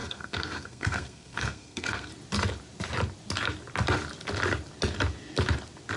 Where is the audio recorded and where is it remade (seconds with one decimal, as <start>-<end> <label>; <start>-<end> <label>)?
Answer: 0.0-2.1 remade; 2.1-6.0 recorded